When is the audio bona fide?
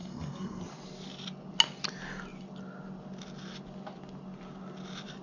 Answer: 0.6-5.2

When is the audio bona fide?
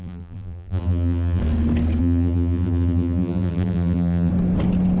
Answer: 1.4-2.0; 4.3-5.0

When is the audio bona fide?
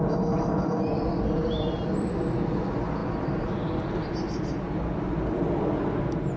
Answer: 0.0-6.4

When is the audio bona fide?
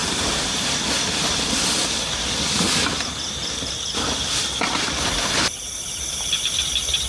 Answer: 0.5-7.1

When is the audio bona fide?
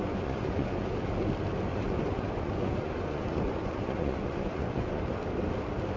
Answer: 1.1-1.7; 5.0-6.0